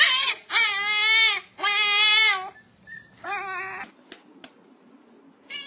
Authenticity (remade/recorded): recorded